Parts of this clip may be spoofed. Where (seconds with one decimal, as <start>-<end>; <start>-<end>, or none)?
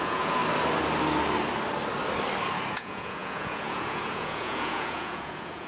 0.0-0.4; 2.7-5.7